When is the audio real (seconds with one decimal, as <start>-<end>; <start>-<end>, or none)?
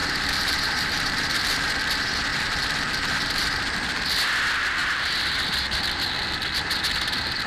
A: 1.7-2.3; 4.0-7.5